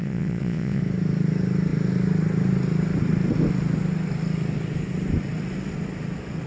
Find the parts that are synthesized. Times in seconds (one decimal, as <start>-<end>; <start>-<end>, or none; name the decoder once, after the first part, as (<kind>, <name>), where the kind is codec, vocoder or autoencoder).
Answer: 0.0-0.8 (vocoder, Vocos)